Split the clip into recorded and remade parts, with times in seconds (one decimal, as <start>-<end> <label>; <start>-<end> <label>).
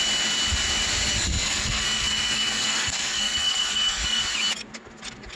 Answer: 0.0-1.2 recorded; 1.2-4.2 remade; 4.2-5.4 recorded